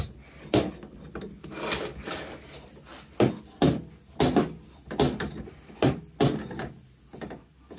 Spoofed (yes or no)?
no